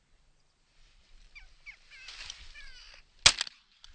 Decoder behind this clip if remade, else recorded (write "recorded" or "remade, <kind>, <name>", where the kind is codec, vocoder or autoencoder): recorded